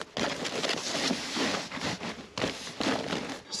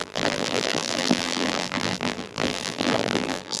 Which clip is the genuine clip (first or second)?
first